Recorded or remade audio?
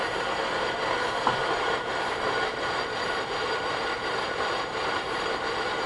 remade